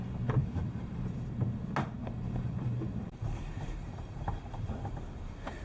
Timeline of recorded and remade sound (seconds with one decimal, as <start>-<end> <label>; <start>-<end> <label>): 0.0-0.4 recorded; 0.4-1.5 remade; 1.5-2.0 recorded; 2.0-4.7 remade; 4.7-5.6 recorded